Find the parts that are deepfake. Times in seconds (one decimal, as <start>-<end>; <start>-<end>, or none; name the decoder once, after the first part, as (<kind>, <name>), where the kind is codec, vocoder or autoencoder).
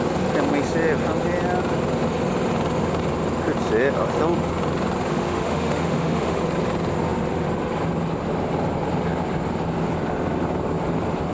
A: 5.1-6.4 (autoencoder, DAC-VAE)